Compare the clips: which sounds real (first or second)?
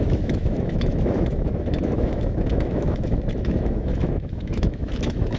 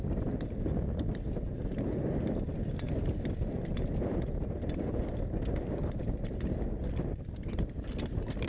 second